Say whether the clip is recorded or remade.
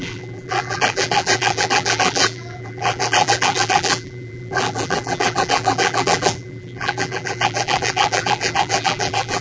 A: remade